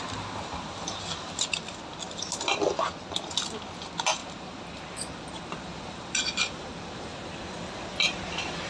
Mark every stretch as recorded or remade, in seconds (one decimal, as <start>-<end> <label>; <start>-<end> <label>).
0.0-4.2 recorded; 4.2-7.4 remade; 7.4-8.7 recorded